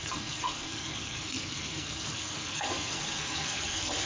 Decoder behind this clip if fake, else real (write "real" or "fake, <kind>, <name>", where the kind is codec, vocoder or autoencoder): fake, codec, SNAC